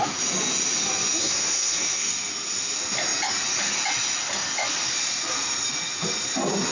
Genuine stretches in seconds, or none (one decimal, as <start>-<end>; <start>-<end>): 0.0-1.2; 2.1-6.7